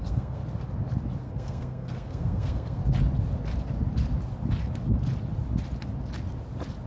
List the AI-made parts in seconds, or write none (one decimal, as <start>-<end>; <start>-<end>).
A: 0.0-0.4; 1.2-2.8